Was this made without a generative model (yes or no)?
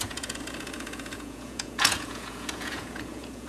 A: no